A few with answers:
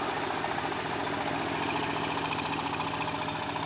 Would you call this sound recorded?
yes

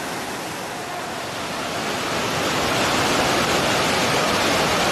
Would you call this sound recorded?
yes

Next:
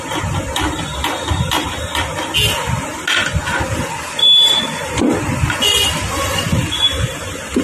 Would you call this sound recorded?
yes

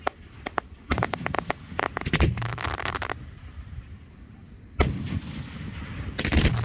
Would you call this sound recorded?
yes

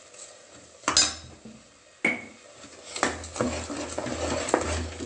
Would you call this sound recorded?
yes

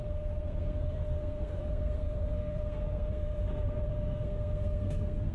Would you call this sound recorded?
no